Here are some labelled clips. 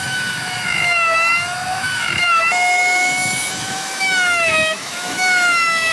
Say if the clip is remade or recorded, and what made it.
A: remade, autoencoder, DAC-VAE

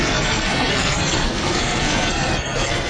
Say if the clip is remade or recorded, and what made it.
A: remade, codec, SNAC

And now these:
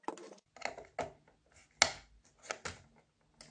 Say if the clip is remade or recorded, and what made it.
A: recorded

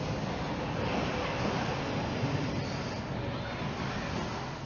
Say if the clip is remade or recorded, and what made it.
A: recorded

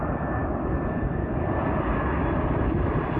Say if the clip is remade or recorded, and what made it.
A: recorded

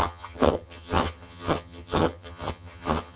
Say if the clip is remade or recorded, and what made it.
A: remade, vocoder, HiFi-GAN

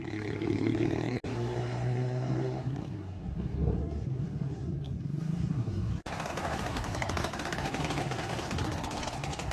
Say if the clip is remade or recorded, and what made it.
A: remade, codec, SNAC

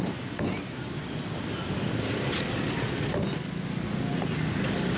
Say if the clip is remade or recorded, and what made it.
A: recorded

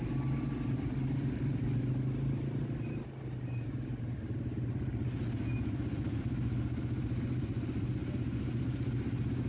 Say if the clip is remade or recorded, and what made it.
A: recorded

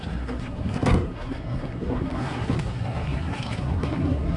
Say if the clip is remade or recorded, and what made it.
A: remade, codec, SNAC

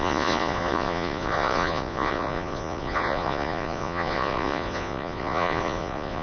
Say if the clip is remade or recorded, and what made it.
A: remade, vocoder, Vocos